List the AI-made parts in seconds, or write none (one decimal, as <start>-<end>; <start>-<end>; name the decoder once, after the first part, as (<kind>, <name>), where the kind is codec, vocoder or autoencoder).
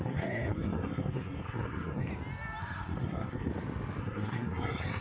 0.0-2.1 (codec, SNAC); 2.6-3.5; 4.0-5.0